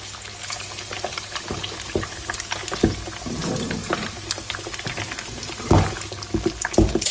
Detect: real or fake real